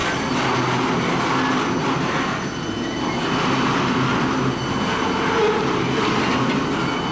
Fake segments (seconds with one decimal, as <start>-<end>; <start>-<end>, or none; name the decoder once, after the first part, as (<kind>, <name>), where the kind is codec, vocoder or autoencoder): none